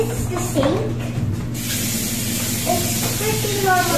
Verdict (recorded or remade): recorded